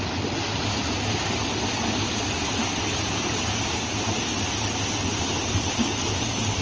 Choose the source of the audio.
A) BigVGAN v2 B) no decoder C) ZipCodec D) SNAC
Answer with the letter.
B